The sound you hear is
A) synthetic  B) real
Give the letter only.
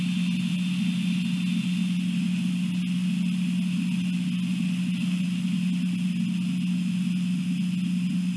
B